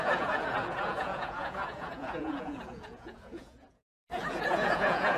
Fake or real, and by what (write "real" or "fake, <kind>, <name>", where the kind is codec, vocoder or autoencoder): fake, vocoder, Vocos